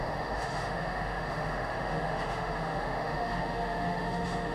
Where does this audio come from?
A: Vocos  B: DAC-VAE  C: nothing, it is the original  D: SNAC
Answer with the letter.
B